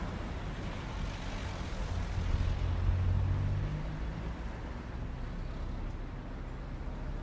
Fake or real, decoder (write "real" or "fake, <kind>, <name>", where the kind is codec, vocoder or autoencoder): real